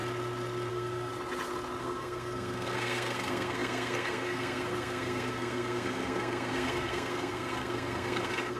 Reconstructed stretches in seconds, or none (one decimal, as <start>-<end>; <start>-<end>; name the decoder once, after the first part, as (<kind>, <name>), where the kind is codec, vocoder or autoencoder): 0.7-1.1 (codec, SNAC); 1.8-8.6